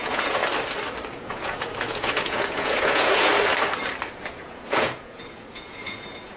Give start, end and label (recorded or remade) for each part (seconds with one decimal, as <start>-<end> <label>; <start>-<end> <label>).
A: 0.0-0.4 remade; 0.4-1.2 recorded; 1.2-3.3 remade; 3.3-4.1 recorded; 4.1-6.4 remade